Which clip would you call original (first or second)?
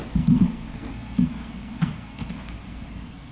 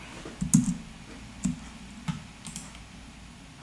second